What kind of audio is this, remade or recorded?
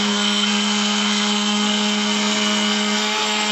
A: remade